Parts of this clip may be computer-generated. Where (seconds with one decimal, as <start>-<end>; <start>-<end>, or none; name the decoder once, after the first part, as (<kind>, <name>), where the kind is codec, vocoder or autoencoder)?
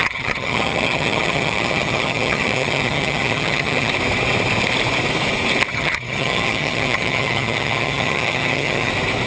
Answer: 0.0-3.9 (vocoder, HiFi-GAN); 5.7-8.9